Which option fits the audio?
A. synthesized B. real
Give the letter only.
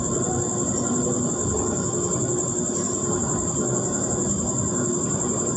A